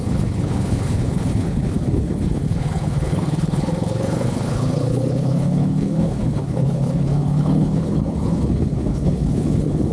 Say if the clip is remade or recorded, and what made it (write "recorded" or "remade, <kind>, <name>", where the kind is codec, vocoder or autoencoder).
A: remade, codec, HILCodec